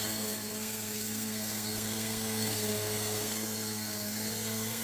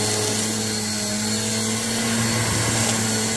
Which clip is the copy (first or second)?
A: first